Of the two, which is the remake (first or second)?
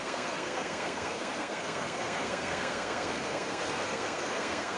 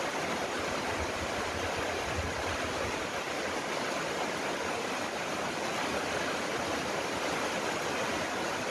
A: first